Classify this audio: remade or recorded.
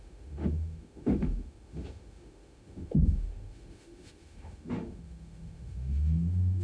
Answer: remade